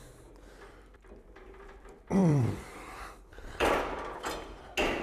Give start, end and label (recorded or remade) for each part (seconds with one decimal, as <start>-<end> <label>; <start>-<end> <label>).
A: 0.0-2.2 recorded; 2.2-3.8 remade; 3.8-5.0 recorded